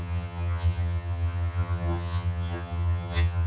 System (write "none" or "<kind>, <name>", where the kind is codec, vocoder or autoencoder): vocoder, HiFi-GAN